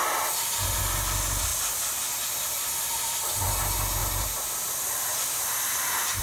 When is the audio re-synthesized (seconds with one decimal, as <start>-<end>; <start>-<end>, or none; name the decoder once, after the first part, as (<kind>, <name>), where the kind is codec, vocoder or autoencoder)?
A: 0.0-0.8 (vocoder, BigVGAN v2); 5.1-6.2